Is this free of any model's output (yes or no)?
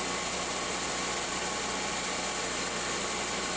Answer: yes